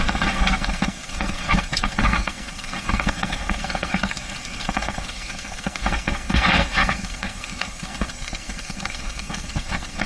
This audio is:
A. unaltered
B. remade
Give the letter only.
B